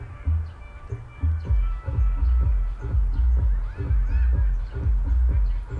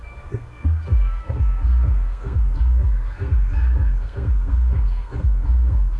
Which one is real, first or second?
first